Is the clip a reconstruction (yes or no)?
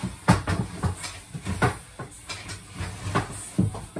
no